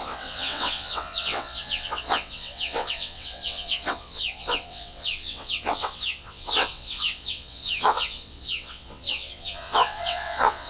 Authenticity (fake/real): fake